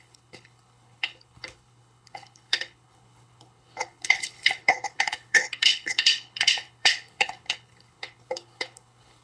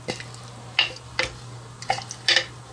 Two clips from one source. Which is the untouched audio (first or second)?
second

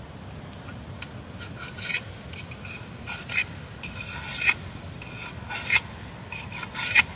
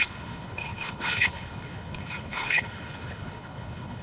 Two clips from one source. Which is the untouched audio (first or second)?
first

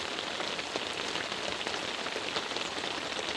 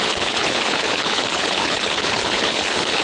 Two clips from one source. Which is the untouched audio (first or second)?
first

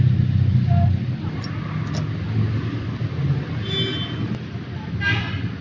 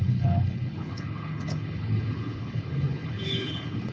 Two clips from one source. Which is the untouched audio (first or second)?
first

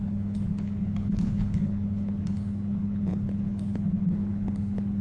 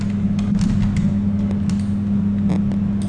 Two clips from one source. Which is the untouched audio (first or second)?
second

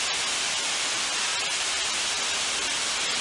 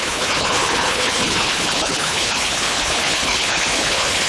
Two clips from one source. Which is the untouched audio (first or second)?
first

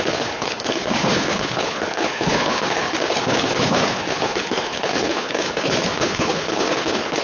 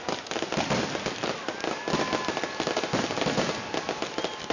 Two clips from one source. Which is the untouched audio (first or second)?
second